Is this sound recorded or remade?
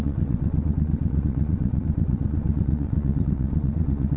remade